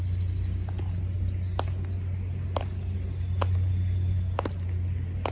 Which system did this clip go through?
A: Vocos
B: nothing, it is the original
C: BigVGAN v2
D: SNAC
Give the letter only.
B